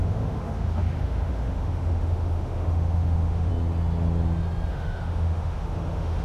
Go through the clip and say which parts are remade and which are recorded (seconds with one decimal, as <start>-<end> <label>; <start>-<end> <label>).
0.0-3.5 remade; 3.5-4.7 recorded; 4.7-6.2 remade